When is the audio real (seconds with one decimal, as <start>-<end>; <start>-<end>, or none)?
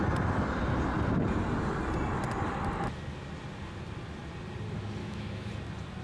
0.0-5.0; 5.5-6.0